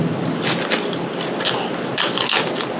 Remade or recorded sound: recorded